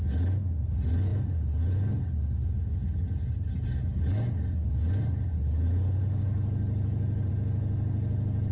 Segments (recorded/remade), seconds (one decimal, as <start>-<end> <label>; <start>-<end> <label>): 0.0-8.5 recorded